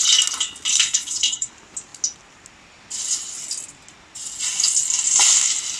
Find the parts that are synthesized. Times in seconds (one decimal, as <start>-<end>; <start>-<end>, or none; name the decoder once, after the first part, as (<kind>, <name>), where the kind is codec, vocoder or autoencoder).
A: 0.7-1.5 (codec, SNAC)